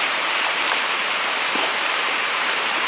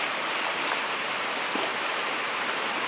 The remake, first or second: first